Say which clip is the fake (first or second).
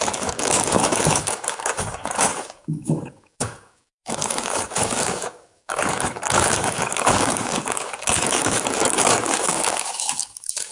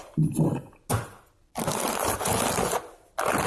first